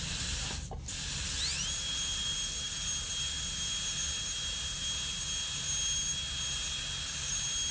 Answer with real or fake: real